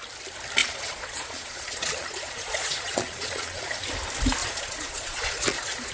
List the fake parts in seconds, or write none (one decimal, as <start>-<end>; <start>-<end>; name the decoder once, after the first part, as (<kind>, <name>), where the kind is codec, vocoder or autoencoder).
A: 0.6-3.8 (vocoder, Vocos); 4.4-5.9